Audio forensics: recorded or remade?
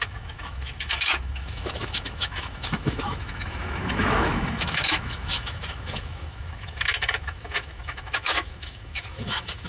remade